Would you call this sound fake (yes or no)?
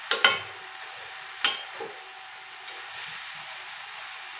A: no